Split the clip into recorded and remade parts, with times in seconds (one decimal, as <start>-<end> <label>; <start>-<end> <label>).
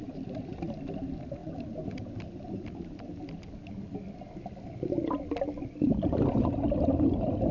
0.0-7.5 recorded